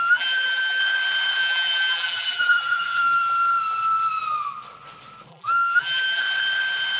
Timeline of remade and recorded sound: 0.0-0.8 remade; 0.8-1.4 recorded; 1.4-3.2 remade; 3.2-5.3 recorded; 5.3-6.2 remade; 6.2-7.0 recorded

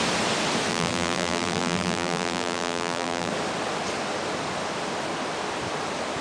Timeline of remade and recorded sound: 0.0-0.7 recorded; 0.7-3.3 remade; 3.3-6.2 recorded

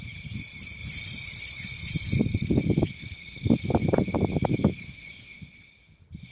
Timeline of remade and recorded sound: 0.0-0.8 recorded; 0.8-2.2 remade; 2.2-6.3 recorded

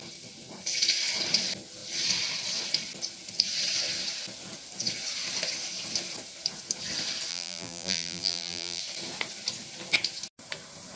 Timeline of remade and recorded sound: 0.0-7.3 recorded; 7.3-8.8 remade; 8.8-11.0 recorded

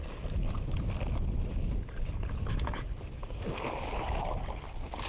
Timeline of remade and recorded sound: 0.0-1.9 remade; 1.9-5.1 recorded